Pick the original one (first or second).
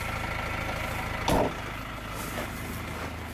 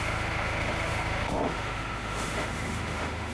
first